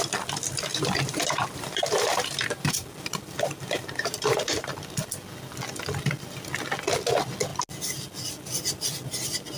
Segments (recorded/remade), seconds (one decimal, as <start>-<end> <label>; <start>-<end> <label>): 0.0-0.7 recorded; 0.7-4.7 remade; 4.7-9.6 recorded